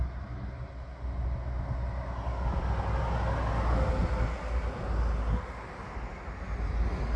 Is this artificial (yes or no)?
no